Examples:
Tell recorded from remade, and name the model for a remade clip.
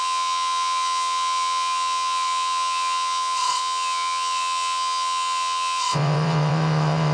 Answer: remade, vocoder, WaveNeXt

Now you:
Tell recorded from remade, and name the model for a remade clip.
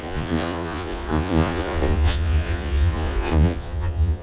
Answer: remade, vocoder, Vocos